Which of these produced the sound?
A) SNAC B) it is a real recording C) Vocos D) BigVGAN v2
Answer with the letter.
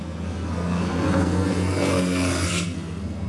A